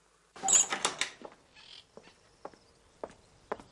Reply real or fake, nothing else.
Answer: real